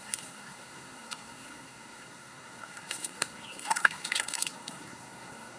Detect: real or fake fake